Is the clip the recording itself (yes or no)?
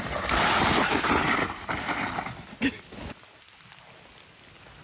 yes